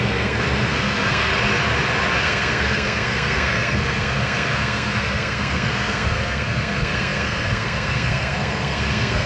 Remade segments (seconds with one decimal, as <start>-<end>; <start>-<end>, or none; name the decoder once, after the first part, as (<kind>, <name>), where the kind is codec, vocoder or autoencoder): 0.0-1.3 (codec, SNAC); 2.2-9.3